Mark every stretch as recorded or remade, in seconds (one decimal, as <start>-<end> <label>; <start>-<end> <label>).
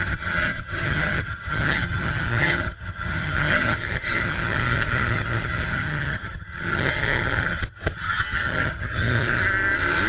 0.0-9.4 remade; 9.4-10.1 recorded